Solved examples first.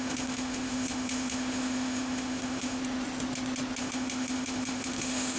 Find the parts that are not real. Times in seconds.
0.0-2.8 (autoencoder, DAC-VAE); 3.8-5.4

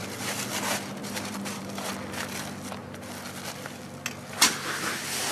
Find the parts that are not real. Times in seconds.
1.0-1.9 (vocoder, BigVGAN v2)

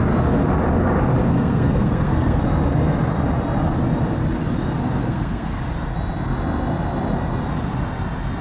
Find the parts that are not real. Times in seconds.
1.2-2.4 (codec, SNAC); 5.0-5.6

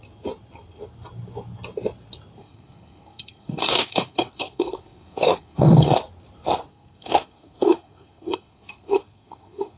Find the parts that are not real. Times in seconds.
2.4-6.0 (codec, SNAC); 6.7-9.8

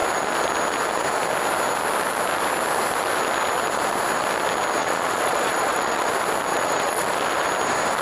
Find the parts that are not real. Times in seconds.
4.8-6.1 (vocoder, Vocos); 6.5-7.1